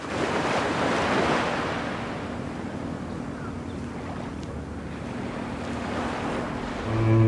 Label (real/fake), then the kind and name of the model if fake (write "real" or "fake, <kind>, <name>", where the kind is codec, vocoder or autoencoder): real